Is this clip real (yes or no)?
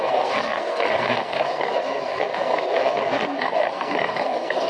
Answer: no